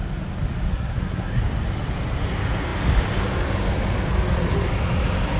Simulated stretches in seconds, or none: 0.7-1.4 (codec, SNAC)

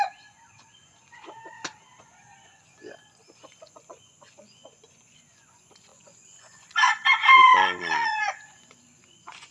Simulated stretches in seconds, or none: 0.0-1.4 (vocoder, Vocos); 2.0-9.5

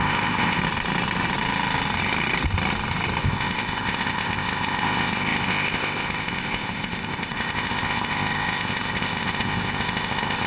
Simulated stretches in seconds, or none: 0.0-0.6 (codec, ZipCodec); 3.2-10.5

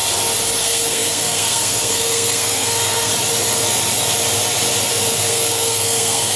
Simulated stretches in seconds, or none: 0.6-3.1 (codec, SNAC); 5.1-6.4

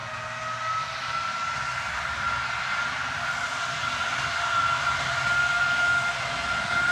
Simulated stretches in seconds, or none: none

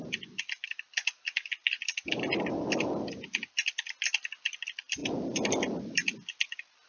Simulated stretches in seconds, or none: none

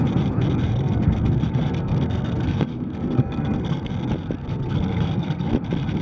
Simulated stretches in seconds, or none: 0.7-3.9 (codec, SNAC); 4.4-5.5